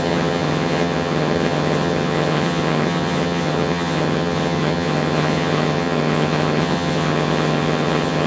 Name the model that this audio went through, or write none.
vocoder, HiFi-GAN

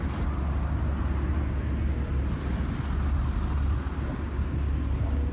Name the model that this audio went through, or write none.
none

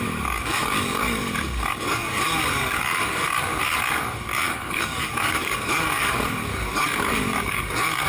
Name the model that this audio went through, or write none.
codec, DAC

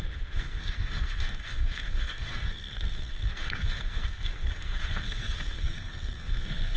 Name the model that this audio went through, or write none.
codec, SNAC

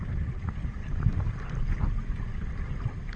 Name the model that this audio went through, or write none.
none